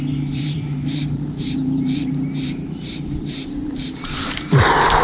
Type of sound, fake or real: fake